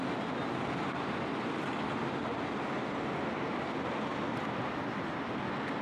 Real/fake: real